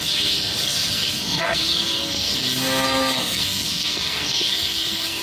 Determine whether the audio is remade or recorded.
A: remade